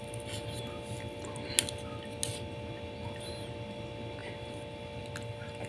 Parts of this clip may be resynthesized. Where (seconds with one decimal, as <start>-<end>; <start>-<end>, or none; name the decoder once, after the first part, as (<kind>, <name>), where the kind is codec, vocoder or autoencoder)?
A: none